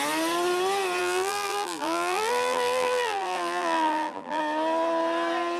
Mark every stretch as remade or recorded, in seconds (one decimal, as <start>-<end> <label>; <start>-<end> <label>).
0.0-1.0 recorded; 1.0-4.4 remade; 4.4-5.6 recorded